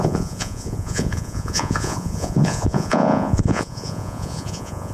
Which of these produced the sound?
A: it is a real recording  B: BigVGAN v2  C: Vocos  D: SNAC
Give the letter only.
C